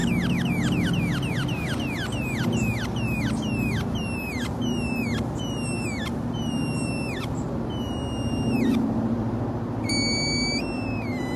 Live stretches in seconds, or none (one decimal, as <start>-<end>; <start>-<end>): 0.0-11.4